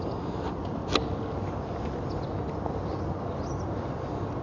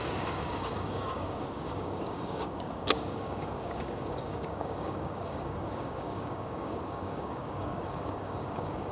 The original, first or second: first